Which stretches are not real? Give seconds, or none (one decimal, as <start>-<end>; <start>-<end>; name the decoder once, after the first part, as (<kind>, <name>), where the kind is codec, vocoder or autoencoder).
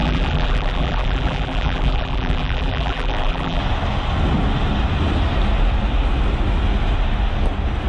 0.0-3.6 (vocoder, BigVGAN v2)